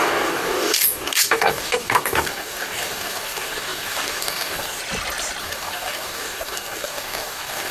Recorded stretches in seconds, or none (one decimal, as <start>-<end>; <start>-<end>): 4.8-5.4